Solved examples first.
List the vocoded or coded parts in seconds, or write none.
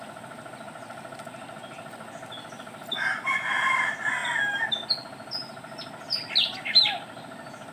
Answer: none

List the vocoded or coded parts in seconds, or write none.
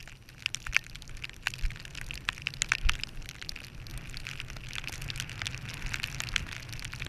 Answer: none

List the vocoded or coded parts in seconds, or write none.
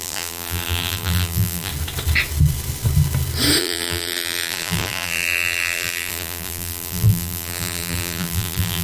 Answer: 0.0-1.7 (vocoder, BigVGAN v2); 3.6-8.8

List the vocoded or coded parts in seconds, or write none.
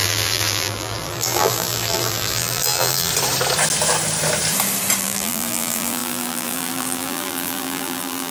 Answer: 0.0-3.1 (vocoder, BigVGAN v2); 5.0-8.3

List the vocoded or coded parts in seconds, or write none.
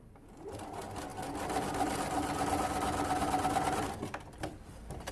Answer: 0.0-1.1 (vocoder, BigVGAN v2); 3.8-4.5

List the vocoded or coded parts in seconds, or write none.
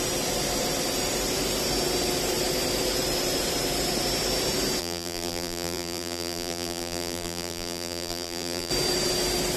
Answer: 4.8-8.7 (vocoder, BigVGAN v2)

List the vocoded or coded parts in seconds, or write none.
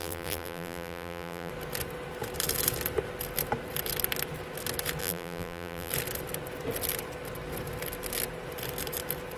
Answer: 0.0-1.5 (vocoder, BigVGAN v2); 5.0-5.9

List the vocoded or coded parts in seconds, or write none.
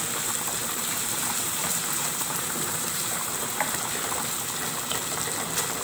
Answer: 0.6-3.9 (vocoder, BigVGAN v2)